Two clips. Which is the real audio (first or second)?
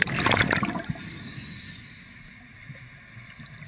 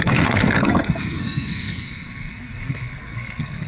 first